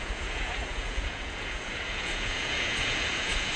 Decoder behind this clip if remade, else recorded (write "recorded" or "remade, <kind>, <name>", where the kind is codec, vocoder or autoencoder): remade, vocoder, Vocos